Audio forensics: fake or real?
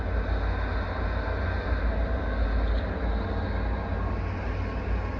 real